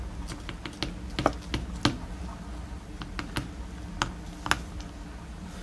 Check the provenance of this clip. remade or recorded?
recorded